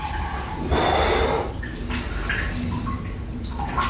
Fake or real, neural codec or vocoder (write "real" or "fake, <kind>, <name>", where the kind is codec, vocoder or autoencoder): real